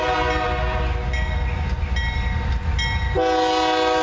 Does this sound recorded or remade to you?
recorded